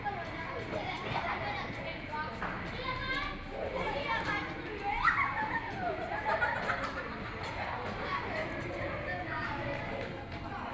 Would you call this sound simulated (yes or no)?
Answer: no